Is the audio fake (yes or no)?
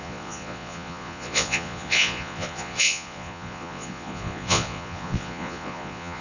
yes